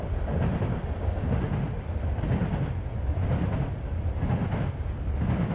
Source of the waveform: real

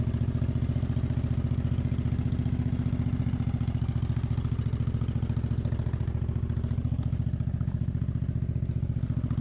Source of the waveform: real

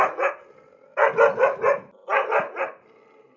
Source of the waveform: real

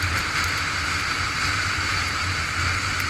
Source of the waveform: real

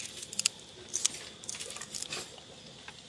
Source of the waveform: real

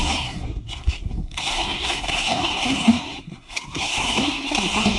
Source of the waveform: fake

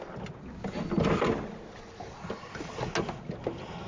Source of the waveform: real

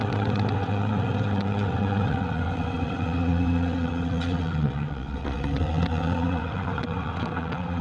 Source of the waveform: fake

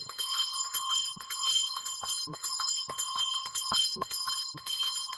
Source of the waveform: fake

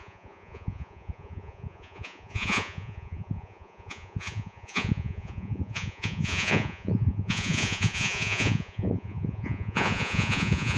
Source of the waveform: fake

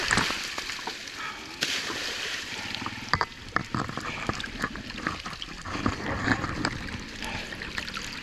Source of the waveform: real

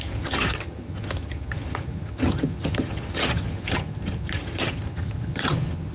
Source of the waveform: fake